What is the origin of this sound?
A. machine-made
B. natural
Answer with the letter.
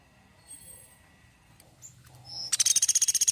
B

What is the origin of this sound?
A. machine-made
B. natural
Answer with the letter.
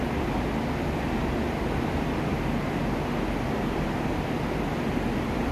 A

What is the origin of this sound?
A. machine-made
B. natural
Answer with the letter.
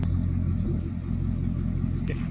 B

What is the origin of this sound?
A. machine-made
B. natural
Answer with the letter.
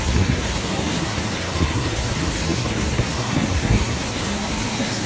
A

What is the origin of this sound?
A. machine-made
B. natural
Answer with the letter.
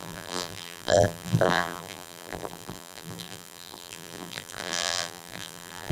A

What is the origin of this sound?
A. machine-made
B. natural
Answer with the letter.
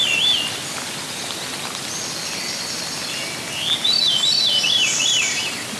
B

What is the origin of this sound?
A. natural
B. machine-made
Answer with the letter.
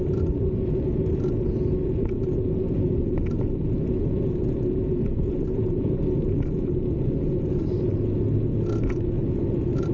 A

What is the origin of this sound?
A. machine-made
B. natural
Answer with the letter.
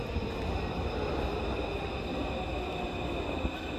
B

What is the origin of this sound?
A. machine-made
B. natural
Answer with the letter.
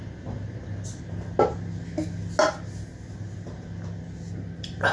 B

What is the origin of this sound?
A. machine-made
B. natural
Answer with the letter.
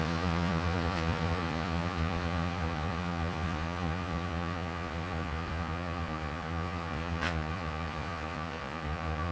A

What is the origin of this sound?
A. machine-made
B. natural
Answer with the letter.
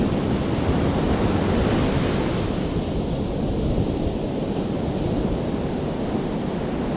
B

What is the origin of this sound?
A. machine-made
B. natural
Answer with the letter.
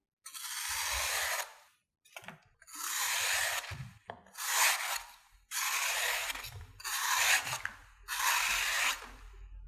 B